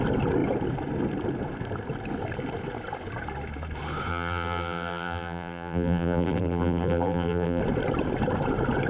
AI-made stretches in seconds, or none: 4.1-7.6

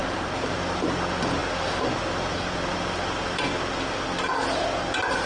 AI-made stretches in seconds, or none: none

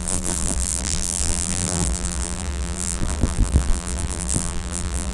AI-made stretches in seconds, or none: 0.0-5.1

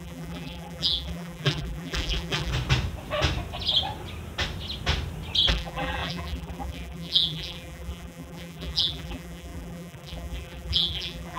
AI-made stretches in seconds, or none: 0.0-2.5; 5.5-11.4

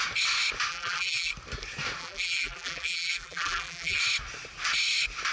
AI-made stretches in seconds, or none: 0.7-1.3; 2.0-4.0

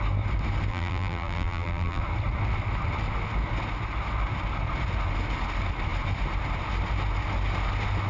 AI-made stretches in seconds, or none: 0.7-2.0

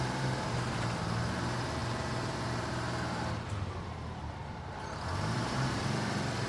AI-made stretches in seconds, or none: 0.0-6.5